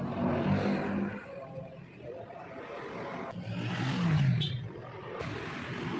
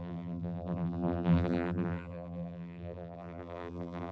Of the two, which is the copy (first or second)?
second